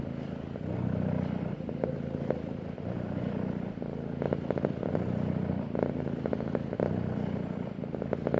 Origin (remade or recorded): recorded